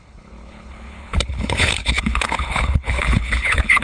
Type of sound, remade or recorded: remade